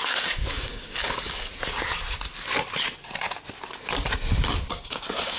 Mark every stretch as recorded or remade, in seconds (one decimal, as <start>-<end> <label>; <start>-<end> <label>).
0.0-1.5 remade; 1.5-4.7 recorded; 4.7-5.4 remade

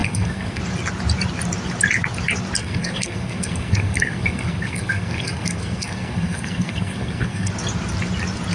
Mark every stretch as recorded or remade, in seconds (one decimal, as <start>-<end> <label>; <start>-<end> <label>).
0.0-0.6 remade; 0.6-2.6 recorded; 2.6-7.5 remade; 7.5-8.5 recorded

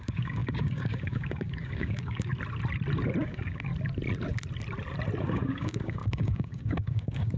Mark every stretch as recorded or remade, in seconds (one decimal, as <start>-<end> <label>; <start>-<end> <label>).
0.0-2.3 remade; 2.3-3.2 recorded; 3.2-3.7 remade; 3.7-5.2 recorded; 5.2-7.4 remade